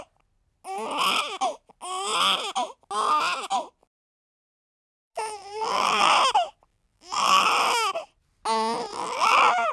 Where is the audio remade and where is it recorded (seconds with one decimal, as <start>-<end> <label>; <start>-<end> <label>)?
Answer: 0.0-3.8 recorded; 3.8-6.1 remade; 6.1-6.7 recorded; 6.7-7.4 remade; 7.4-8.9 recorded; 8.9-9.7 remade